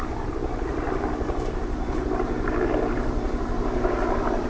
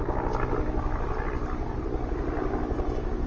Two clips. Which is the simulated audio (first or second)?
first